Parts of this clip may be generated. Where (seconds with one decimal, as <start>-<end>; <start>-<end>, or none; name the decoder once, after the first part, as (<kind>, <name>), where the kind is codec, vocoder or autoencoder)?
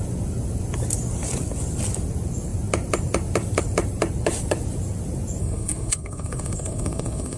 5.4-7.4 (codec, SNAC)